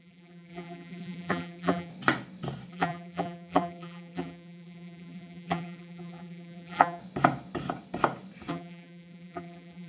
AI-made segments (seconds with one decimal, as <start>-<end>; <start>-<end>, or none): 0.0-1.9; 2.7-7.0; 8.5-9.9